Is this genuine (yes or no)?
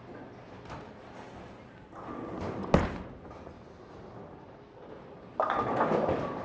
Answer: yes